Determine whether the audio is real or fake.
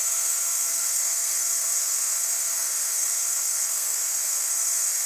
fake